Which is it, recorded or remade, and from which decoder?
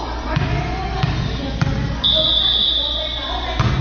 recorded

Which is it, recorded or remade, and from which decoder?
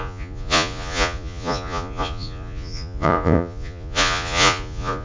remade, vocoder, Vocos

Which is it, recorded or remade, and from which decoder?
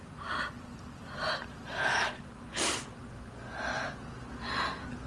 recorded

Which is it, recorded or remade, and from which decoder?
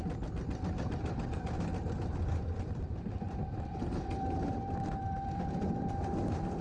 recorded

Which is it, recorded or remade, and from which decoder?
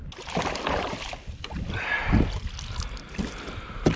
recorded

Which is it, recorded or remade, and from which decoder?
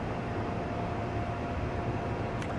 recorded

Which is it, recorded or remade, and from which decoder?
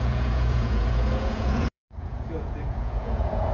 remade, vocoder, Vocos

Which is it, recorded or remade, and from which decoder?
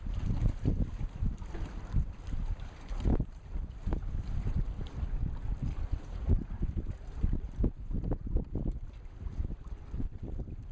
recorded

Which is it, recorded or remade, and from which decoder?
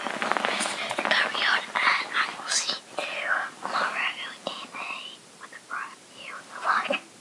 recorded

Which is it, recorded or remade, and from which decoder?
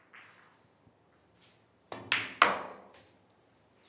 recorded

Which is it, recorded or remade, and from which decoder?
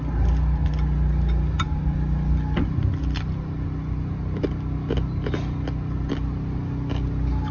recorded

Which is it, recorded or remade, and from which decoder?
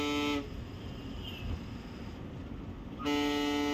recorded